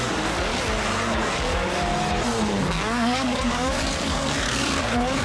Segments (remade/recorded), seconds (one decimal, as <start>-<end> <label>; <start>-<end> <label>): 0.0-0.5 remade; 0.5-1.2 recorded; 1.2-1.9 remade; 1.9-2.6 recorded; 2.6-5.2 remade

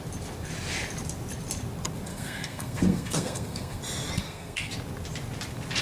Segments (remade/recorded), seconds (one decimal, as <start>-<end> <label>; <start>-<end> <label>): 0.0-2.1 recorded; 2.1-3.8 remade; 3.8-4.2 recorded; 4.2-4.7 remade; 4.7-5.8 recorded

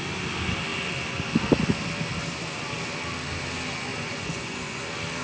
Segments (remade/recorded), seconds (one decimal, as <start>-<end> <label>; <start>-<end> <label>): 0.0-3.9 recorded; 3.9-4.8 remade; 4.8-5.2 recorded